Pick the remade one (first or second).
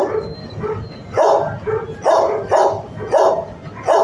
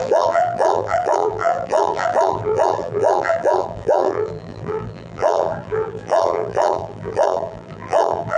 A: second